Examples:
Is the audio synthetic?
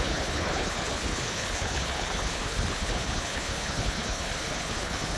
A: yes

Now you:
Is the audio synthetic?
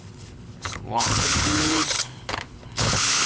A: yes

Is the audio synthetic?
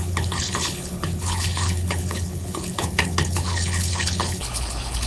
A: yes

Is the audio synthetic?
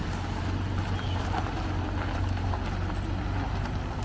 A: no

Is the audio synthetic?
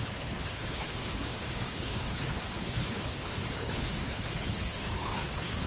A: yes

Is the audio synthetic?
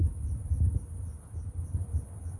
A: no